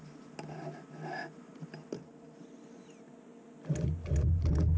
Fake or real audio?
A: real